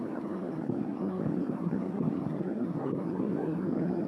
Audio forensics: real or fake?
fake